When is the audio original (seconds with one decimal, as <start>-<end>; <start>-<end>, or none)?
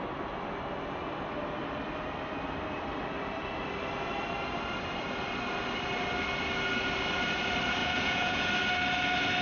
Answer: 0.0-7.8; 8.5-9.4